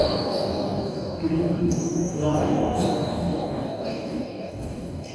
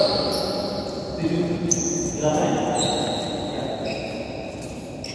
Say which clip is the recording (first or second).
second